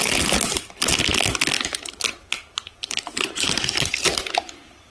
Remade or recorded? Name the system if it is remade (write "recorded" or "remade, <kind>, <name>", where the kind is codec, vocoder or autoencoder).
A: recorded